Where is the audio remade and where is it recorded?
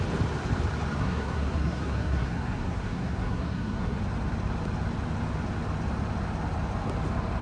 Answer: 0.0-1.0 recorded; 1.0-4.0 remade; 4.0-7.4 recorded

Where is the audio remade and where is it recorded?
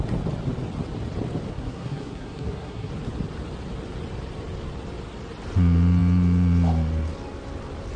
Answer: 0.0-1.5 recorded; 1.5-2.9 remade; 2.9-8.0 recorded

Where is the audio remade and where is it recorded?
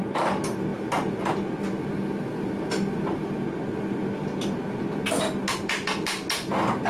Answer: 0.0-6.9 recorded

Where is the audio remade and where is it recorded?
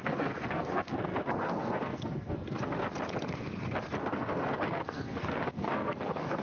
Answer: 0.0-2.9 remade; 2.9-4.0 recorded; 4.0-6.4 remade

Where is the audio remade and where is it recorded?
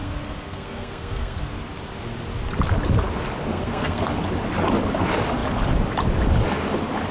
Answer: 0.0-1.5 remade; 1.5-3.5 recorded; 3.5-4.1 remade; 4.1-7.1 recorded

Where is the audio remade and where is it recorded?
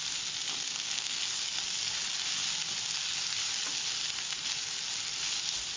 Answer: 0.0-0.5 recorded; 0.5-1.2 remade; 1.2-5.8 recorded